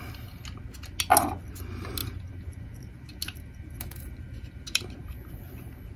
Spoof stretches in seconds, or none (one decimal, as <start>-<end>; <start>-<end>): 2.0-5.3